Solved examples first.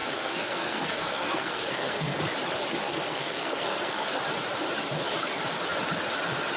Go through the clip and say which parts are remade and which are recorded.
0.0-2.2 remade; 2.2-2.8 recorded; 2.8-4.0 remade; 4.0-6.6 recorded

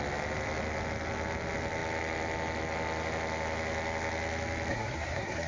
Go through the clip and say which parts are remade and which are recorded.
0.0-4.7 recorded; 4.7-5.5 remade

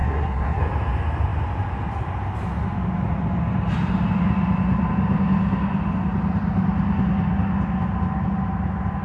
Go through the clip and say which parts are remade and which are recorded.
0.0-0.6 remade; 0.6-9.0 recorded

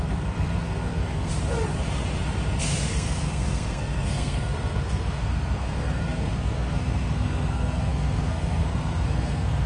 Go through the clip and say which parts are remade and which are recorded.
0.0-1.3 remade; 1.3-2.6 recorded; 2.6-9.7 remade

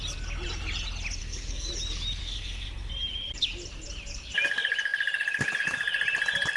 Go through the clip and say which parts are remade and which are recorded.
0.0-1.2 recorded; 1.2-1.7 remade; 1.7-2.2 recorded; 2.2-2.9 remade; 2.9-6.6 recorded

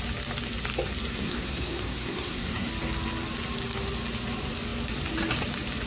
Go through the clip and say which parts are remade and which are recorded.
0.0-1.1 recorded; 1.1-2.7 remade; 2.7-5.9 recorded

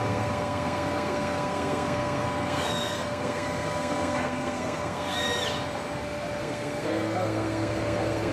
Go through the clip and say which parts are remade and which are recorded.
0.0-5.2 remade; 5.2-6.4 recorded; 6.4-8.3 remade

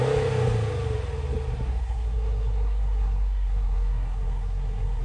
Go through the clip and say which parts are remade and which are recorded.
0.0-1.7 recorded; 1.7-5.0 remade